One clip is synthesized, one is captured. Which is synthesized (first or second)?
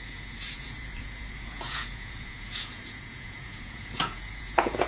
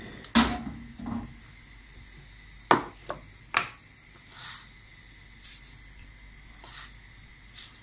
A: first